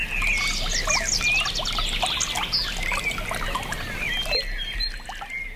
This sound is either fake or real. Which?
real